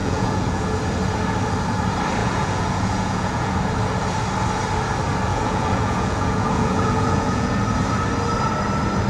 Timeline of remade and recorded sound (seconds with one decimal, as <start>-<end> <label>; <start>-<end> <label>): 0.0-0.6 remade; 0.6-2.2 recorded; 2.2-3.6 remade; 3.6-5.3 recorded; 5.3-7.6 remade; 7.6-9.1 recorded